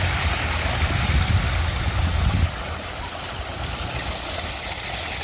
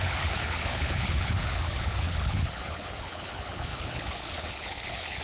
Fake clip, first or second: second